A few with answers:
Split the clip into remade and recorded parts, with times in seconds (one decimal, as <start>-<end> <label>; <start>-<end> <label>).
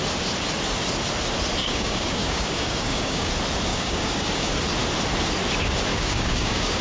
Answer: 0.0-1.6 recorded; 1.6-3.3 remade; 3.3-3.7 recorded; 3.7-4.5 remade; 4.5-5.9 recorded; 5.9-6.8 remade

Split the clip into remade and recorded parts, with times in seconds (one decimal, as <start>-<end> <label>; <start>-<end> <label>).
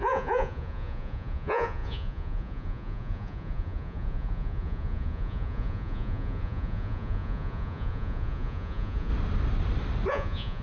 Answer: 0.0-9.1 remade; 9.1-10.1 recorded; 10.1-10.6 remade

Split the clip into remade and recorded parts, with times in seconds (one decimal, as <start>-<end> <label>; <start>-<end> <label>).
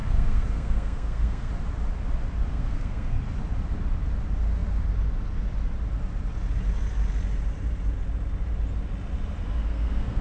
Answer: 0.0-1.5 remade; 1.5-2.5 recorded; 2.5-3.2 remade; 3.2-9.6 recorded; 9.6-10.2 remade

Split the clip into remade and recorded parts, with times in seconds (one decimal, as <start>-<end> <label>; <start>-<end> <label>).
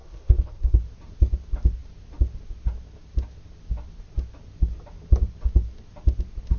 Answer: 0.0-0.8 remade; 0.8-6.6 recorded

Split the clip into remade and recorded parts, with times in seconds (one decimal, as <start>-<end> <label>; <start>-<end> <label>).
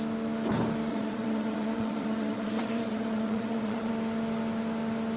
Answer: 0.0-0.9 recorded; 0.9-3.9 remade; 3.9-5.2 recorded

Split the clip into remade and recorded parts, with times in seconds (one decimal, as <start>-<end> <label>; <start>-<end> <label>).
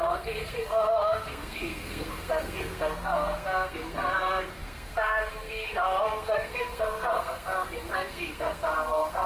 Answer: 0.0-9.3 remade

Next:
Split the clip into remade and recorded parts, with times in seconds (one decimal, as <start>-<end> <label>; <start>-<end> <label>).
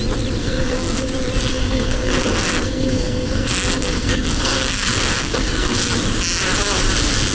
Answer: 0.0-0.4 recorded; 0.4-1.1 remade; 1.1-1.5 recorded; 1.5-5.9 remade; 5.9-7.3 recorded